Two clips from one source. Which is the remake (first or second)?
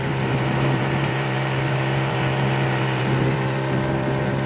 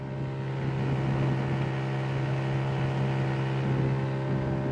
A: first